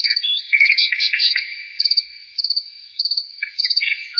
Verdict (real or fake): fake